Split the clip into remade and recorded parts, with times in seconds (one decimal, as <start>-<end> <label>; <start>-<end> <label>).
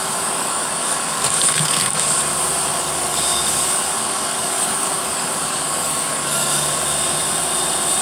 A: 0.0-2.2 remade; 2.2-2.7 recorded; 2.7-6.8 remade; 6.8-8.0 recorded